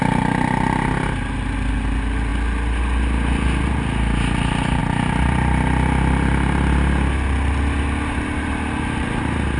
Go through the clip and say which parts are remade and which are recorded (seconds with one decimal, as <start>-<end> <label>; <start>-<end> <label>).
0.0-9.6 recorded